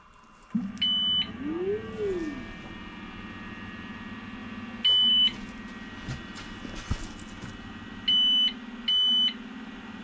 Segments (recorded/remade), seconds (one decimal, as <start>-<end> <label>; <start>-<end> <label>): 0.0-10.0 recorded